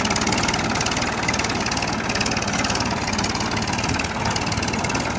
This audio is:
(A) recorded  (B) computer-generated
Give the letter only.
A